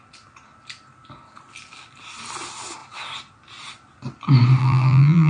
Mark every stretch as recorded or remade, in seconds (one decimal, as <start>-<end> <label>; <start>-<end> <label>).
0.0-4.6 recorded; 4.6-5.3 remade